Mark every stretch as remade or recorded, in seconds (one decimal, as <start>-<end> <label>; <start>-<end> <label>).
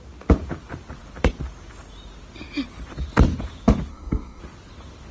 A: 0.0-3.9 recorded; 3.9-4.4 remade; 4.4-5.1 recorded